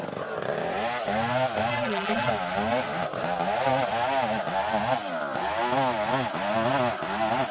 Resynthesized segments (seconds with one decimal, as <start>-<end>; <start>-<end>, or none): 1.7-2.3